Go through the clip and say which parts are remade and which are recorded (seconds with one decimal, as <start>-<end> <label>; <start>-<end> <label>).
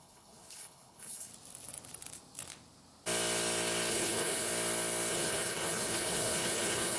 0.0-1.3 remade; 1.3-3.9 recorded; 3.9-4.5 remade; 4.5-5.1 recorded; 5.1-7.0 remade